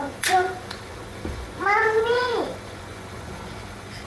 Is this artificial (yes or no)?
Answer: yes